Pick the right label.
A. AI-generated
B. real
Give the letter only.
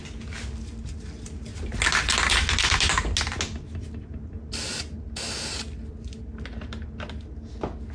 B